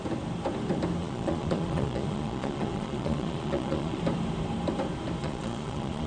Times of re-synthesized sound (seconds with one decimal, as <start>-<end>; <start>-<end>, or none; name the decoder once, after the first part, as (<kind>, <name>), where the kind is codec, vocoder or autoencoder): 1.0-4.0 (vocoder, Vocos); 5.2-6.1